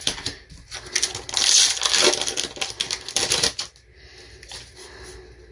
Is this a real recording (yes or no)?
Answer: yes